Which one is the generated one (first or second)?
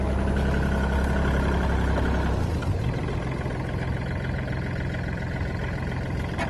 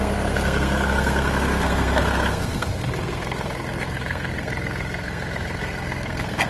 second